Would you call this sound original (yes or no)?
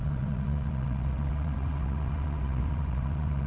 no